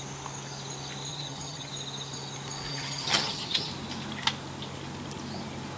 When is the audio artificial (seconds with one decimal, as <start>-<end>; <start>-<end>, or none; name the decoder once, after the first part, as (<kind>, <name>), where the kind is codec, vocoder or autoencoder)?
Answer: 1.1-1.7 (vocoder, HiFi-GAN); 2.7-3.7